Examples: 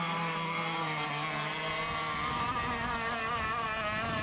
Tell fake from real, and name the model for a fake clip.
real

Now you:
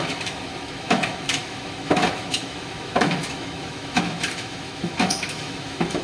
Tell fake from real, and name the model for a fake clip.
fake, autoencoder, DAC-VAE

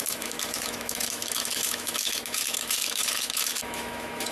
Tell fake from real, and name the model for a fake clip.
fake, autoencoder, DAC-VAE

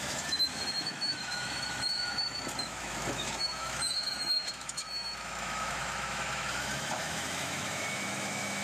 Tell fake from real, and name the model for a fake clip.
fake, autoencoder, DAC-VAE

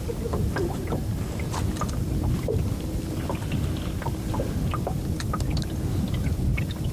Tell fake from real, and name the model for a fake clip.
real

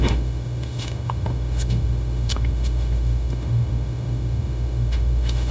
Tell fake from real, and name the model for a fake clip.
fake, autoencoder, DAC-VAE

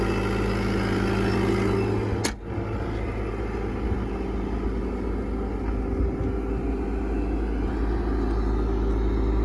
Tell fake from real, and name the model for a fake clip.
real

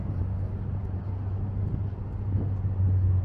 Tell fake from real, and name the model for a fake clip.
real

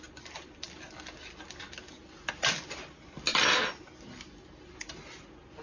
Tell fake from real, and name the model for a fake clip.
real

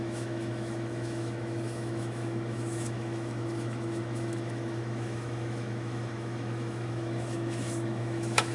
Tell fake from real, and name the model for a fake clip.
fake, autoencoder, DAC-VAE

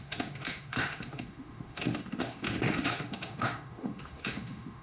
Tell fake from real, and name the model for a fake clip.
fake, autoencoder, DAC-VAE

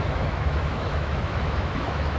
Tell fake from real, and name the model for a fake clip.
fake, autoencoder, DAC-VAE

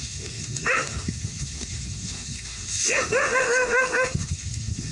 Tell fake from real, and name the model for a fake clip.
fake, autoencoder, DAC-VAE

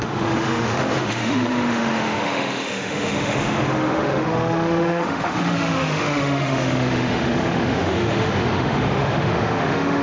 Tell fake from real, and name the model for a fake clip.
fake, autoencoder, DAC-VAE